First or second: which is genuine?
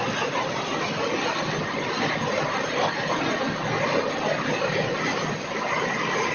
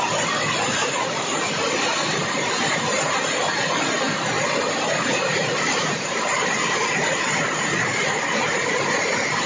first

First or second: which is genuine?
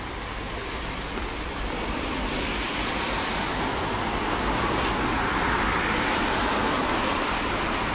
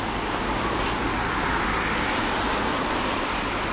second